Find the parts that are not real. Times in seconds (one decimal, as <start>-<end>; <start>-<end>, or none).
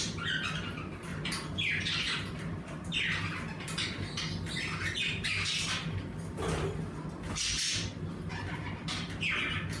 none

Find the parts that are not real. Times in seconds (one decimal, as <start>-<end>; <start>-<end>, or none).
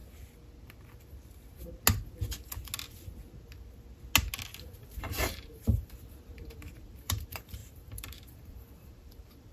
5.0-9.5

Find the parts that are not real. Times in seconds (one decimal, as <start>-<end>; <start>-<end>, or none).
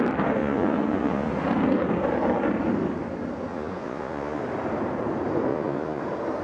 0.4-1.3; 3.5-4.4; 5.5-6.0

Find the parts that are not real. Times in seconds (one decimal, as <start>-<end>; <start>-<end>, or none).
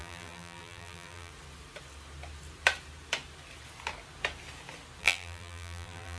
0.0-1.3; 5.0-6.2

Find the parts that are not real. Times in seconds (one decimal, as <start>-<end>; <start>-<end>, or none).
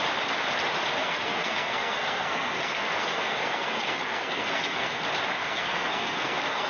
1.0-5.0; 5.4-6.7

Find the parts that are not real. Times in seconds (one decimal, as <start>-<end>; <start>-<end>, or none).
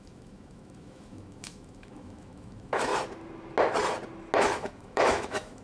0.0-2.9; 4.4-5.6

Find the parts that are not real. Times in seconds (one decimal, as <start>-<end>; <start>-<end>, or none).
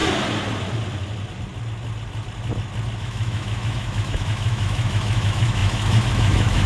3.0-6.7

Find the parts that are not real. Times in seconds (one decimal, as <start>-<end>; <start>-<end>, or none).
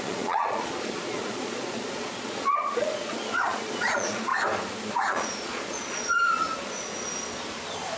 0.0-4.3; 4.9-6.9